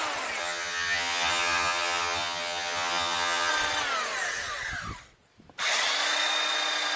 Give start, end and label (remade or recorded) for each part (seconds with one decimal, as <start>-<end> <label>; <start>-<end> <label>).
0.0-0.4 recorded; 0.4-3.5 remade; 3.5-7.0 recorded